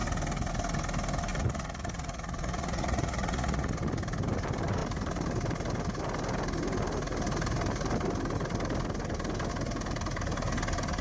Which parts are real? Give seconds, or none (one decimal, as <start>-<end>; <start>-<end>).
0.0-1.3; 3.7-11.0